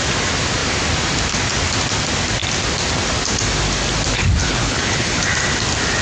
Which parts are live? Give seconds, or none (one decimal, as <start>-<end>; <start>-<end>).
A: 0.0-4.4; 5.3-6.0